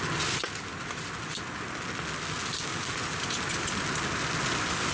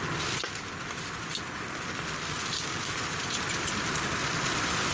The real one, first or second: first